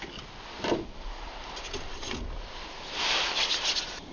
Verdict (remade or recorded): recorded